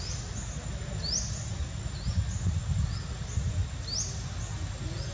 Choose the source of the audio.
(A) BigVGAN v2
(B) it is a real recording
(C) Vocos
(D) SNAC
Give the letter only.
B